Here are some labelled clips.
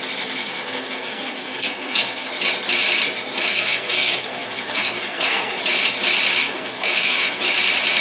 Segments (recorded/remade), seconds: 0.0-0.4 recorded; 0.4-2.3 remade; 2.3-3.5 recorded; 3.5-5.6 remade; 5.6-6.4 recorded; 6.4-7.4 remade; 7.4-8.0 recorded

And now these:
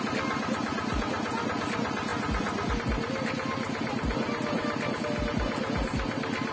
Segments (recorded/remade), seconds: 0.0-6.5 recorded

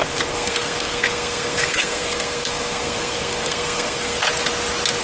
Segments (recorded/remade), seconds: 0.0-4.2 remade; 4.2-5.0 recorded

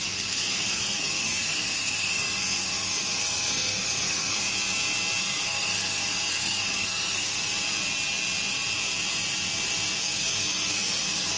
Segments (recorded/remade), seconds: 0.0-4.4 remade; 4.4-5.2 recorded; 5.2-7.5 remade; 7.5-10.0 recorded; 10.0-11.4 remade

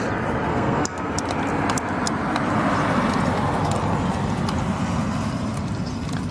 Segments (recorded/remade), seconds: 0.0-0.5 recorded; 0.5-1.1 remade; 1.1-6.3 recorded

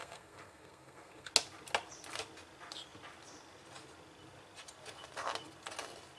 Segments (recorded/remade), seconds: 0.0-1.3 remade; 1.3-6.2 recorded

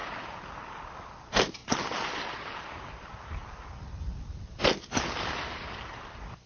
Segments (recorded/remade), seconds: 0.0-6.5 recorded